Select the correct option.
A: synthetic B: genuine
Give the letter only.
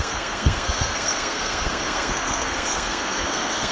A